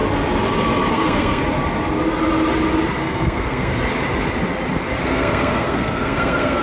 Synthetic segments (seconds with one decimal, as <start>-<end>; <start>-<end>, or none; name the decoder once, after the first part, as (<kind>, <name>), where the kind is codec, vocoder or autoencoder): 0.9-1.4 (codec, SNAC); 3.0-3.7; 5.0-6.6